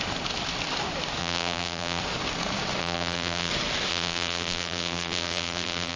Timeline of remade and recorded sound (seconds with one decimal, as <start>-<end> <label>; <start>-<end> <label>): 0.0-1.2 recorded; 1.2-2.0 remade; 2.0-2.8 recorded; 2.8-3.5 remade; 3.5-3.9 recorded; 3.9-6.0 remade